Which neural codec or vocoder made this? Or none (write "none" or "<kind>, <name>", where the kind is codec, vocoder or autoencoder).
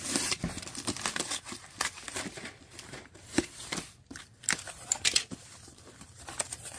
none